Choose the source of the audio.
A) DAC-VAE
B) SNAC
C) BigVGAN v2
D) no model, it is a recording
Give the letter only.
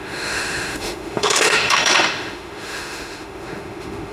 A